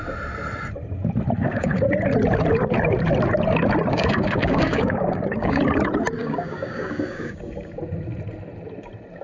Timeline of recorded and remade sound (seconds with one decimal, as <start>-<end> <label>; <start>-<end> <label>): 0.0-1.4 recorded; 1.4-1.9 remade; 1.9-3.9 recorded; 3.9-5.6 remade; 5.6-6.2 recorded; 6.2-7.5 remade; 7.5-9.2 recorded